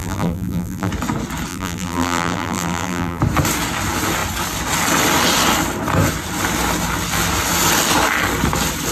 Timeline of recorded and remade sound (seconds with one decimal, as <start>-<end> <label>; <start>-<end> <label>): 0.0-0.9 remade; 0.9-1.5 recorded; 1.5-3.2 remade; 3.2-8.9 recorded